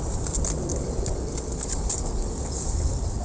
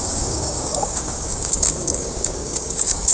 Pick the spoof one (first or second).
second